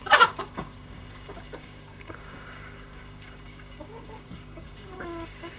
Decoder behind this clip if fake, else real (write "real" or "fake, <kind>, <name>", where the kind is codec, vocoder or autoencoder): fake, codec, DAC